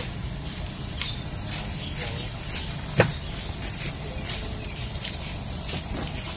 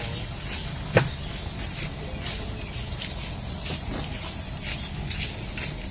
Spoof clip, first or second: first